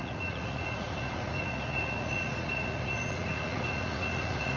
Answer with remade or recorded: remade